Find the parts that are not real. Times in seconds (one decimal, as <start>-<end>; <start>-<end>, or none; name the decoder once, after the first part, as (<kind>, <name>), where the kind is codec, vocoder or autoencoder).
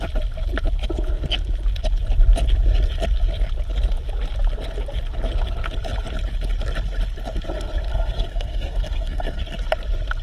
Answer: 7.9-9.4 (codec, SNAC)